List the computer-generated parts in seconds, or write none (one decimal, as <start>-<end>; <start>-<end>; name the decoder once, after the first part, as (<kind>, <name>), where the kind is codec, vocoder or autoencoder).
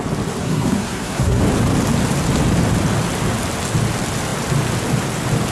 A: 0.4-1.4 (codec, SNAC)